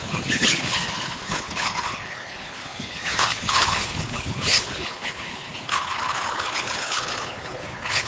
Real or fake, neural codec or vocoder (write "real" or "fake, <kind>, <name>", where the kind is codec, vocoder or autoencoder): fake, codec, HILCodec